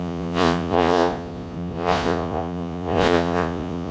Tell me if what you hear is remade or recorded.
remade